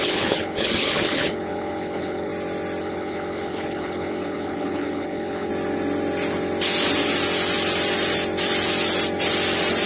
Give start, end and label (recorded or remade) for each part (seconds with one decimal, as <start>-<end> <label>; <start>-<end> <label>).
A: 0.0-2.3 remade; 2.3-2.8 recorded; 2.8-5.5 remade; 5.5-9.9 recorded